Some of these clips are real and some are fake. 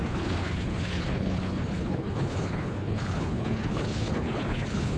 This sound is fake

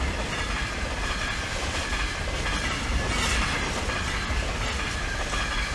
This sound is real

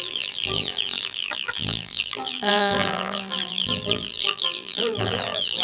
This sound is fake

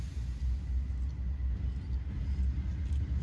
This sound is real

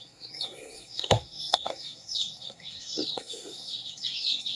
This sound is fake